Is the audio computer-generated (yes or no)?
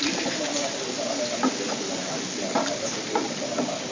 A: no